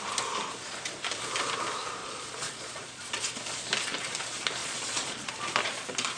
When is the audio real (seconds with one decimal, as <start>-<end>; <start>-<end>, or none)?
0.0-2.0; 3.2-4.6; 5.3-6.2